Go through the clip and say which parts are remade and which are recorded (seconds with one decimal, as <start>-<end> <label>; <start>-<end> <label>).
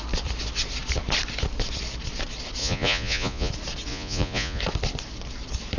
0.0-2.6 recorded; 2.6-3.5 remade; 3.5-3.9 recorded; 3.9-4.6 remade; 4.6-5.8 recorded